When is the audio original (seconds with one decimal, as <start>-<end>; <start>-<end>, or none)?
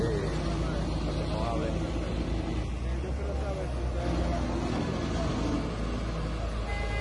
0.0-7.0